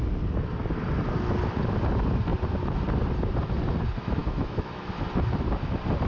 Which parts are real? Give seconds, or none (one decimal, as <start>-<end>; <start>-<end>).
0.0-4.2; 4.8-6.1

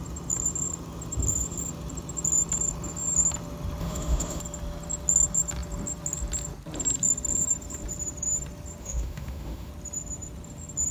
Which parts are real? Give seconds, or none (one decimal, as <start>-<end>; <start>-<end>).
0.0-3.8; 4.4-8.8; 9.7-10.9